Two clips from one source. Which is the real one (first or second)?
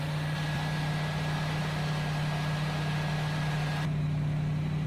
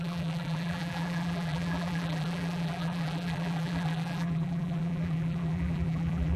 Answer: first